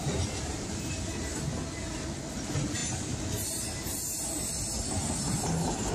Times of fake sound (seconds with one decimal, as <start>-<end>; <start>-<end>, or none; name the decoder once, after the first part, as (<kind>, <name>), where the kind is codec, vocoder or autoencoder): none